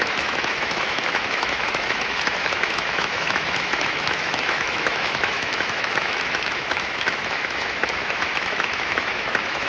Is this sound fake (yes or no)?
yes